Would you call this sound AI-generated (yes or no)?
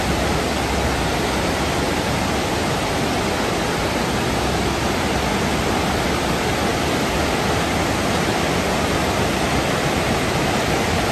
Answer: no